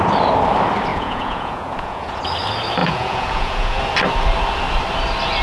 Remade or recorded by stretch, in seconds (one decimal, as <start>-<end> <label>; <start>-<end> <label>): 0.0-0.9 recorded; 0.9-2.2 remade; 2.2-2.8 recorded; 2.8-3.8 remade; 3.8-5.4 recorded